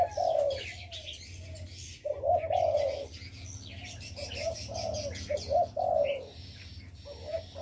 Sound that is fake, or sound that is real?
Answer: real